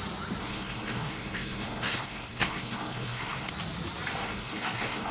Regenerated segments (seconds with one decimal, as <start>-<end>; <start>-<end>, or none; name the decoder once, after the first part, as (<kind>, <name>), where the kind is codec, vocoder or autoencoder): 0.4-3.5 (codec, SNAC); 4.2-5.1